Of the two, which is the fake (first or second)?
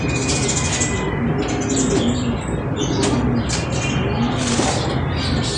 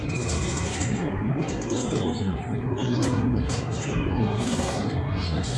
second